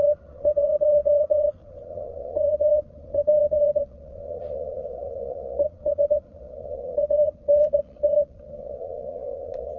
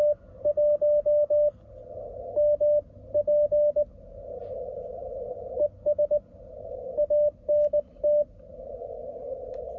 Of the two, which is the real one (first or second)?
second